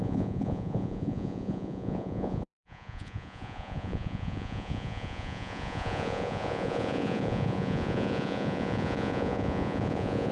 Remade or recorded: remade